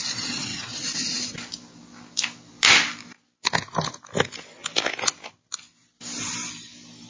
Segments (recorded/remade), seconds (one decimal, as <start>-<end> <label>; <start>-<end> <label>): 0.0-7.1 recorded